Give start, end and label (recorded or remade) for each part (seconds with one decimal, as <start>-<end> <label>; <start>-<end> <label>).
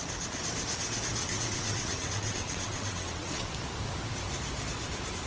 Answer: 0.0-1.2 recorded; 1.2-3.5 remade; 3.5-5.3 recorded